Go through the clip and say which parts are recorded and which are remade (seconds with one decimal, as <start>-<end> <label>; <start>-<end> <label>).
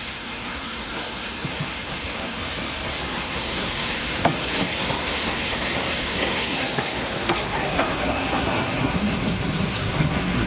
0.0-2.4 remade; 2.4-2.9 recorded; 2.9-10.5 remade